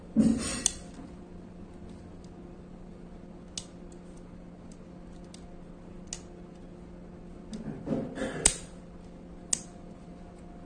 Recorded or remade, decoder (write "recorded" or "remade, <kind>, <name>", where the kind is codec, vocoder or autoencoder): recorded